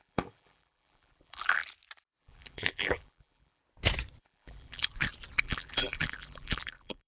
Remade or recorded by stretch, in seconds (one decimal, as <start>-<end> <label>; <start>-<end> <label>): 0.0-1.6 remade; 1.6-2.2 recorded; 2.2-3.6 remade; 3.6-4.2 recorded; 4.2-4.9 remade; 4.9-5.4 recorded; 5.4-7.1 remade